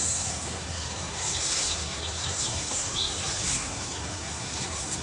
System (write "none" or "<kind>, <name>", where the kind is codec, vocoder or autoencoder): codec, SNAC